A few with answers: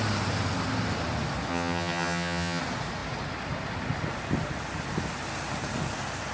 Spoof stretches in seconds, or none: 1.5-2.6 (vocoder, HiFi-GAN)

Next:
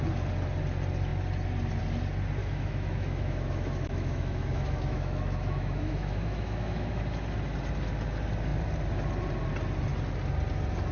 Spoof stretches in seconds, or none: 2.4-7.0 (autoencoder, DAC-VAE)

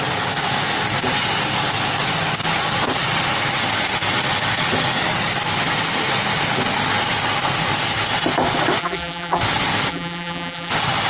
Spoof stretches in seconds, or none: 8.8-9.4 (vocoder, BigVGAN v2); 9.9-10.7

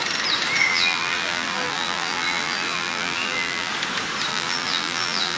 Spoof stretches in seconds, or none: 0.7-3.7 (vocoder, BigVGAN v2); 4.3-5.4

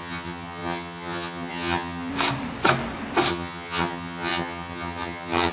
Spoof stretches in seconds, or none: 0.0-2.1 (vocoder, HiFi-GAN); 3.3-5.5

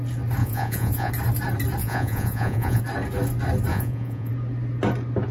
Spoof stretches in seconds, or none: 0.4-1.1 (vocoder, Vocos); 1.8-2.8; 3.7-4.3